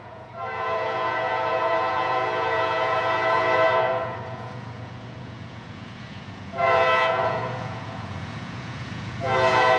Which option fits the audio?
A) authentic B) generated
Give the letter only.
B